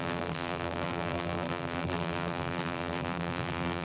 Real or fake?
fake